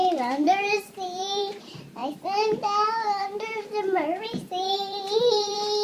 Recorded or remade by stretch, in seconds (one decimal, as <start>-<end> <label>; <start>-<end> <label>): 0.0-2.0 remade; 2.0-3.2 recorded; 3.2-5.8 remade

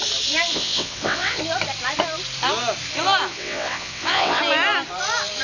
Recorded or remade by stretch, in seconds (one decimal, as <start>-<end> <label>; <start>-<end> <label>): 0.0-0.5 recorded; 0.5-1.4 remade; 1.4-3.3 recorded; 3.3-4.4 remade; 4.4-5.4 recorded

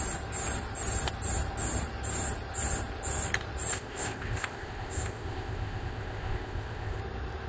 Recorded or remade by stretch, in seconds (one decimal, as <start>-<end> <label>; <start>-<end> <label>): 0.0-3.7 recorded; 3.7-7.0 remade; 7.0-7.5 recorded